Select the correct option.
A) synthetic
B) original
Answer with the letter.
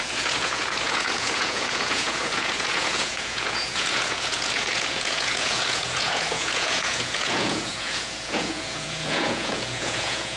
A